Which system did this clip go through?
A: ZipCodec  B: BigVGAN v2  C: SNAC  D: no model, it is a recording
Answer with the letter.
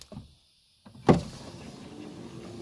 D